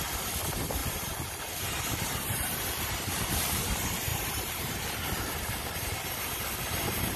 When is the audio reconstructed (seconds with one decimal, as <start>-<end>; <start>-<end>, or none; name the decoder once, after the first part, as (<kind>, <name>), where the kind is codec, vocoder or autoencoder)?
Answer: 0.8-3.6 (vocoder, BigVGAN v2); 4.1-6.4